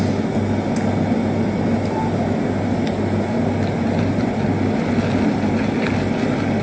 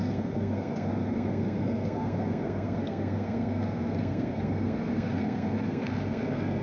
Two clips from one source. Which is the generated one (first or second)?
second